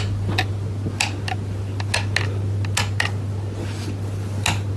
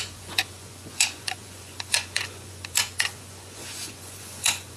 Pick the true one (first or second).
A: first